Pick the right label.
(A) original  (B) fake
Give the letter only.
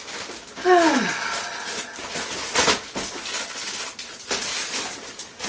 A